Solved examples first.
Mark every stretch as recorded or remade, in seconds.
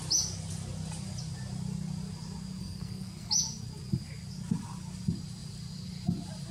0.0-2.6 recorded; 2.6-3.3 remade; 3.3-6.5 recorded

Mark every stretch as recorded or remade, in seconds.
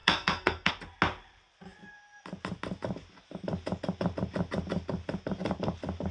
0.0-0.7 remade; 0.7-6.1 recorded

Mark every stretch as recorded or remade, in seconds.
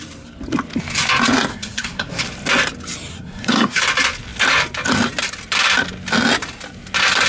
0.0-1.5 recorded; 1.5-2.2 remade; 2.2-3.1 recorded; 3.1-3.8 remade; 3.8-7.3 recorded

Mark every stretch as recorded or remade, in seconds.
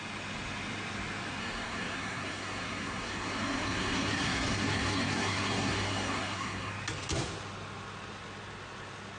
0.0-1.4 recorded; 1.4-6.7 remade; 6.7-9.2 recorded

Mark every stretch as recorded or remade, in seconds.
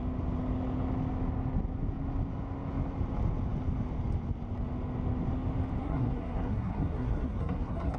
0.0-5.8 recorded; 5.8-8.0 remade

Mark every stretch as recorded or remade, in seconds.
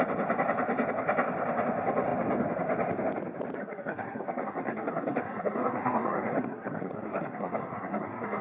0.0-3.6 recorded; 3.6-8.4 remade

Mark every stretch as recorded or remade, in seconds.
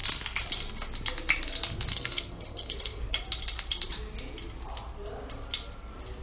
0.0-1.9 recorded; 1.9-3.0 remade; 3.0-6.2 recorded